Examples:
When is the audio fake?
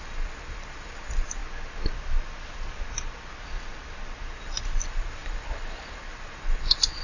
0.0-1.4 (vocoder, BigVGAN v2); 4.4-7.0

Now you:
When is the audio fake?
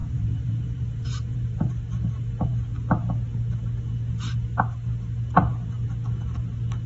0.0-1.7 (vocoder, BigVGAN v2)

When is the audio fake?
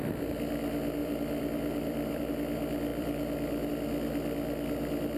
1.0-2.3 (vocoder, BigVGAN v2); 2.9-3.7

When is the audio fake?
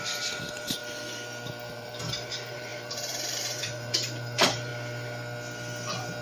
0.0-0.8 (vocoder, BigVGAN v2); 1.7-4.7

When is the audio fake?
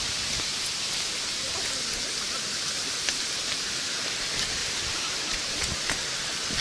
4.6-5.6 (vocoder, BigVGAN v2)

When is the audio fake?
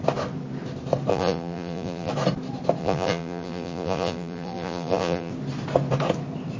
1.1-2.1 (vocoder, BigVGAN v2); 2.8-5.3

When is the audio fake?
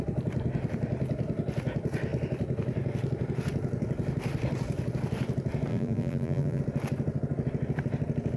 5.7-6.6 (vocoder, BigVGAN v2)